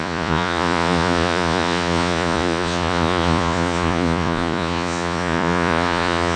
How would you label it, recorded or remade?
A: remade